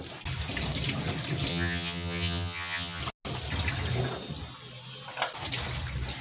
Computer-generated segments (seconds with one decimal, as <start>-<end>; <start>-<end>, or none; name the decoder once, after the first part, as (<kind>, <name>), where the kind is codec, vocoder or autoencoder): 1.5-3.0 (vocoder, HiFi-GAN)